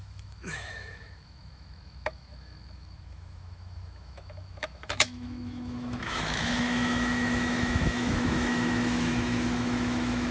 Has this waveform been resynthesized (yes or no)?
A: yes